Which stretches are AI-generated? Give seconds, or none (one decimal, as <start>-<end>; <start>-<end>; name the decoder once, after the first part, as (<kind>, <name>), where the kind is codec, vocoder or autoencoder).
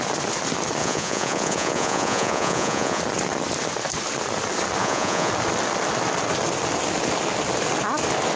0.8-3.0 (vocoder, Vocos); 4.8-5.3